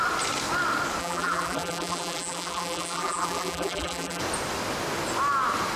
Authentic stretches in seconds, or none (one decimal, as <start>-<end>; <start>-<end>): 0.0-1.0; 4.2-5.8